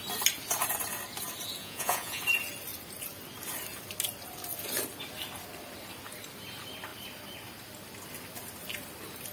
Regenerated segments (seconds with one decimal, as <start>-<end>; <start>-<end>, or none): 1.6-2.2